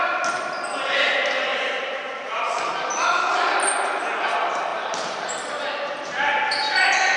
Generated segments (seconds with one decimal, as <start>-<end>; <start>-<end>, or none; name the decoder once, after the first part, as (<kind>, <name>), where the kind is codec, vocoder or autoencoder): 1.5-2.7 (vocoder, BigVGAN v2); 4.7-6.0